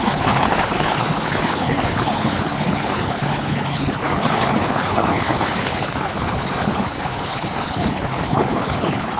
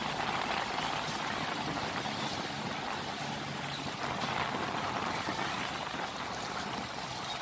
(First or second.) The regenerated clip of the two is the first